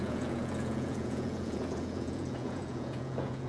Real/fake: fake